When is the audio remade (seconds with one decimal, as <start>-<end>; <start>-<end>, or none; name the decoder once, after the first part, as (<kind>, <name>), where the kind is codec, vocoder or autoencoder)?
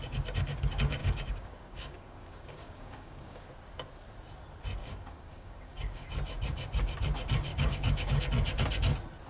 1.0-3.4 (codec, DAC); 4.8-6.1; 7.5-8.2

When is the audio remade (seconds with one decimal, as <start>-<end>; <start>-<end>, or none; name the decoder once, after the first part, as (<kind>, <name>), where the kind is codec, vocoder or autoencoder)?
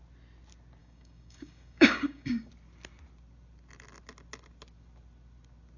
0.8-2.5 (codec, DAC)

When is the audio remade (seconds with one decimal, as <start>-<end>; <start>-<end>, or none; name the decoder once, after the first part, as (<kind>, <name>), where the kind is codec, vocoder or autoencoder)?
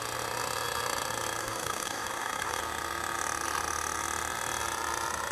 1.4-2.6 (codec, DAC)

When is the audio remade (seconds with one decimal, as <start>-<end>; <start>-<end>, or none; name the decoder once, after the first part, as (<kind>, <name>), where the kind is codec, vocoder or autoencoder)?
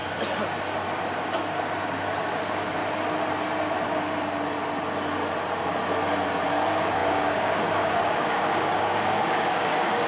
2.3-2.8 (codec, DAC); 6.5-10.1